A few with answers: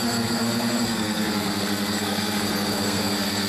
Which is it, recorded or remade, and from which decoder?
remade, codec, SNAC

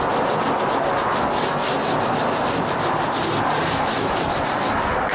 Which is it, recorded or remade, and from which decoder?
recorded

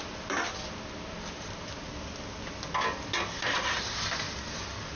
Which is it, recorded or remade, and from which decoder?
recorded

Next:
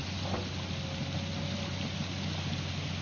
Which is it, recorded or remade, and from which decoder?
recorded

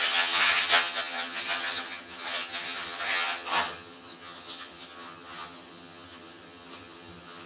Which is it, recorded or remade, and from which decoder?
remade, vocoder, HiFi-GAN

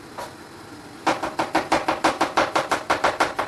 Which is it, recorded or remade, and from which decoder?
remade, vocoder, BigVGAN v2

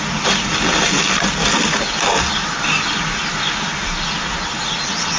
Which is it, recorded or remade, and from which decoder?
recorded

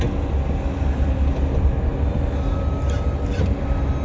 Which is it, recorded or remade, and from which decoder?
recorded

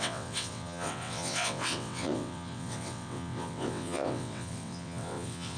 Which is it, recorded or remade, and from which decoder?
remade, vocoder, WaveNeXt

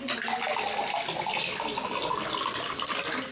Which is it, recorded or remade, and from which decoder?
recorded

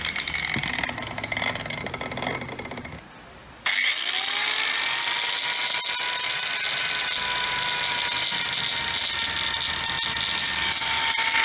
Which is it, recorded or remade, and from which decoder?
recorded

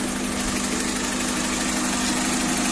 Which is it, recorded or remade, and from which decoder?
recorded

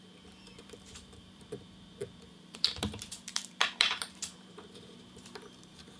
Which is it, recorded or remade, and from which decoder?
remade, vocoder, BigVGAN v2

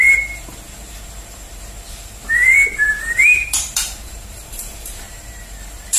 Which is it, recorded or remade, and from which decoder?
remade, vocoder, BigVGAN v2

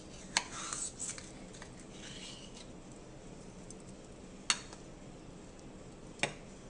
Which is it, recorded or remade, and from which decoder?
recorded